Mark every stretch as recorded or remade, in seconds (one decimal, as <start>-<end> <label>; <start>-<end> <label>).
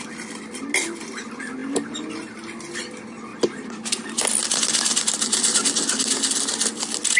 0.0-3.3 recorded; 3.3-4.2 remade; 4.2-7.2 recorded